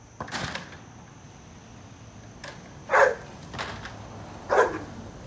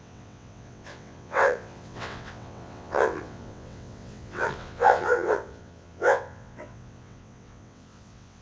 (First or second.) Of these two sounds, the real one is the first